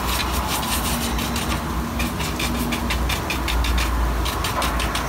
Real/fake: real